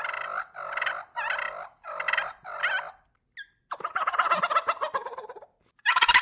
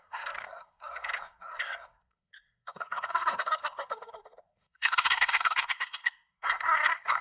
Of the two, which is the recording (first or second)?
first